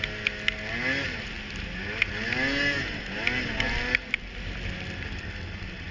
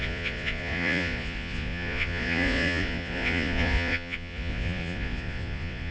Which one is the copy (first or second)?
second